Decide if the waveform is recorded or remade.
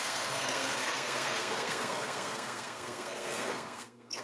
remade